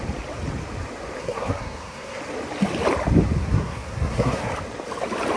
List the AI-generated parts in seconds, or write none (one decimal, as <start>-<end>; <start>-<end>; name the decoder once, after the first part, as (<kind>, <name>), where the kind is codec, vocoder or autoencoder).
1.2-2.2 (codec, SNAC); 3.4-4.5